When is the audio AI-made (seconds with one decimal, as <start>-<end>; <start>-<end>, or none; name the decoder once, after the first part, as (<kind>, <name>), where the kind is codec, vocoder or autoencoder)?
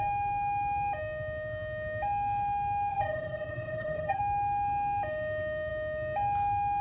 2.9-4.2 (vocoder, HiFi-GAN)